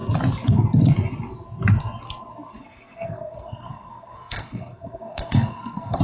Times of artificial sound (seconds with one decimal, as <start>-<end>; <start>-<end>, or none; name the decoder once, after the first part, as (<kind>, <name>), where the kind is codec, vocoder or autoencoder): 2.6-6.0 (codec, SNAC)